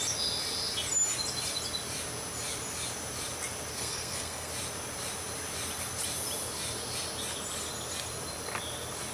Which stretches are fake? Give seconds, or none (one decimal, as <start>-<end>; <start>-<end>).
3.7-4.5